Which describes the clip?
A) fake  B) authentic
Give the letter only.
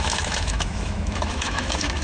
A